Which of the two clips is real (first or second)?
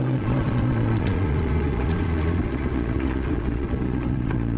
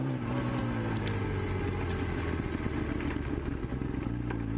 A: second